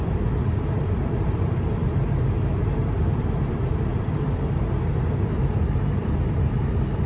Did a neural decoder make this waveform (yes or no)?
yes